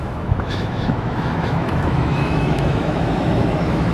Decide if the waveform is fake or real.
fake